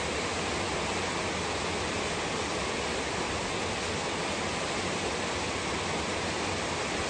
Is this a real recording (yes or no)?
yes